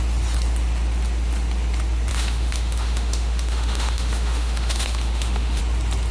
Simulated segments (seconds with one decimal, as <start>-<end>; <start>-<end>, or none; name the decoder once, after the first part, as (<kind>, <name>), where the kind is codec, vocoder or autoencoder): 2.1-5.6 (autoencoder, DAC-VAE)